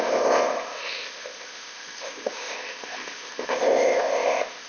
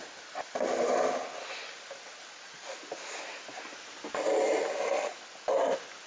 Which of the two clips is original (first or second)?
second